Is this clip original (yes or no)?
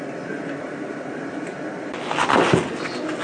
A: yes